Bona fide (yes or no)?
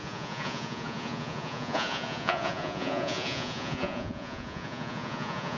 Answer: no